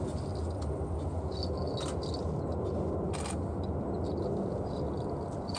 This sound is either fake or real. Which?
real